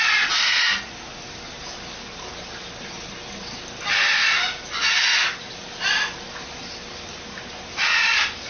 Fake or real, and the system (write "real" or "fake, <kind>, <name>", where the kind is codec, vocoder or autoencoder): real